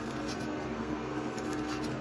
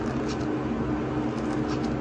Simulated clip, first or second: first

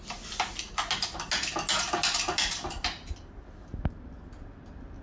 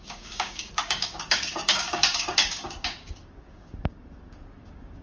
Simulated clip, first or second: second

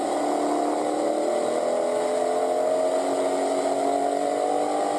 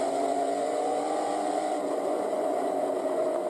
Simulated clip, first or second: second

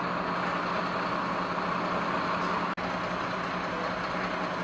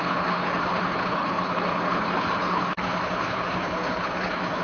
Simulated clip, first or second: second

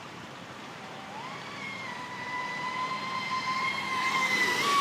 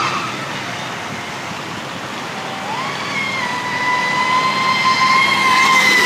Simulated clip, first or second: first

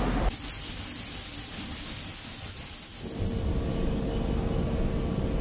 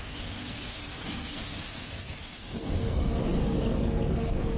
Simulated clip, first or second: second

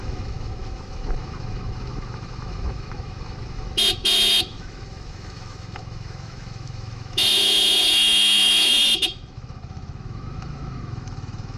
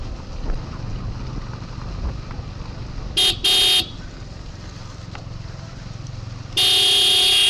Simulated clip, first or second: first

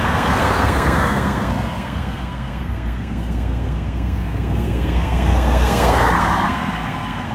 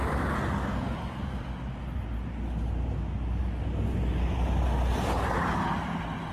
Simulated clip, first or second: first